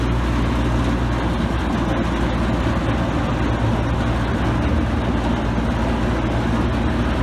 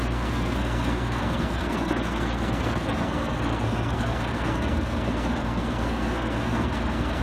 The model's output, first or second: second